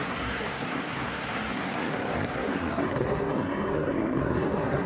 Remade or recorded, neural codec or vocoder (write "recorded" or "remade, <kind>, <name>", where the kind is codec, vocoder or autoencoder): remade, codec, SNAC